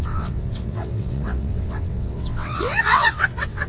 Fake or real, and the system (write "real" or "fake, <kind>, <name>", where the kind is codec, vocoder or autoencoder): fake, vocoder, WaveNeXt